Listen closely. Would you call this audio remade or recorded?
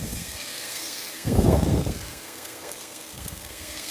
remade